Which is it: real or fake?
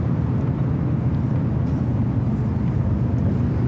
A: real